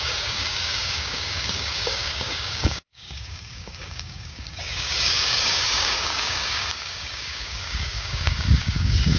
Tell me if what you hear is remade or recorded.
remade